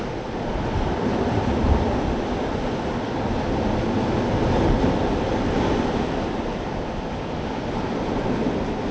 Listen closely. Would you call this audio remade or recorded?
recorded